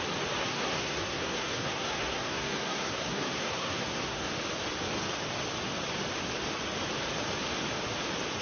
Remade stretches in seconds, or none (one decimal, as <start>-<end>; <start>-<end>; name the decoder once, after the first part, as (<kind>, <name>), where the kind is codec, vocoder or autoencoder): 0.4-4.3 (codec, SNAC)